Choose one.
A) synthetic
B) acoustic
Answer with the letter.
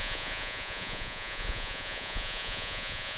A